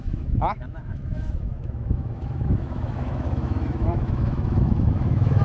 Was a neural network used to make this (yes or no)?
yes